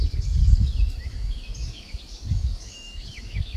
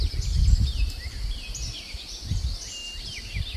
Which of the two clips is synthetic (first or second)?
first